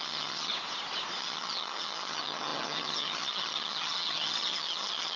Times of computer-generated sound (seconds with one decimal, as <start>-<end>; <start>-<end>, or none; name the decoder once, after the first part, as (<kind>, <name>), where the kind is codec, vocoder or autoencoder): 0.0-0.5 (vocoder, HiFi-GAN); 1.2-5.2